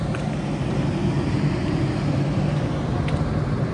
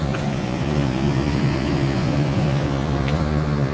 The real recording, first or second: first